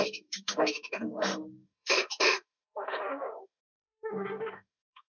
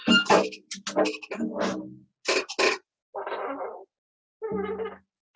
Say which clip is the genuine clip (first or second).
second